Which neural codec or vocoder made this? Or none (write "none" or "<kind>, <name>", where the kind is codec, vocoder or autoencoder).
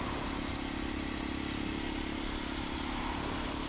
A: none